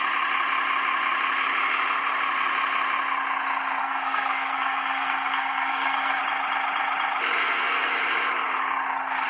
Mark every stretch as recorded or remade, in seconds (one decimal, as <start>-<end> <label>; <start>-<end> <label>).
0.0-3.8 recorded; 3.8-6.2 remade; 6.2-7.4 recorded; 7.4-8.0 remade; 8.0-9.3 recorded